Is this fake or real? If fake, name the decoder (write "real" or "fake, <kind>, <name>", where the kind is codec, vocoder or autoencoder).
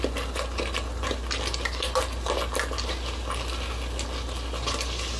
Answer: real